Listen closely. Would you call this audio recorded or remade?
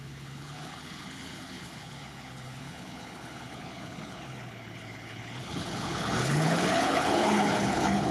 remade